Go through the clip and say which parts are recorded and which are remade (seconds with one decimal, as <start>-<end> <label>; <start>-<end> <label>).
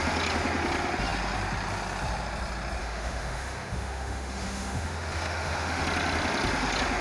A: 0.0-2.8 recorded; 2.8-5.8 remade; 5.8-7.0 recorded